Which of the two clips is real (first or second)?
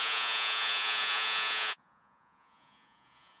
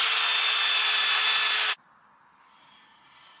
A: second